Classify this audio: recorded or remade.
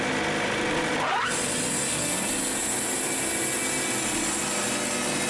recorded